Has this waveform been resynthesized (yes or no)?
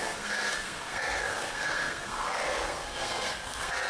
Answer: yes